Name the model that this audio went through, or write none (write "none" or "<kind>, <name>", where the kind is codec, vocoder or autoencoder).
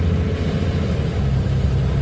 none